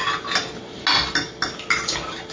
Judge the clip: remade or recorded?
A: recorded